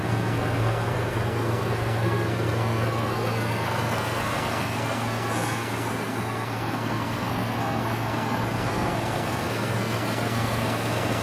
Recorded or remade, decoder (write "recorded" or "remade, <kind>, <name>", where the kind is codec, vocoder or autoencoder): remade, codec, SNAC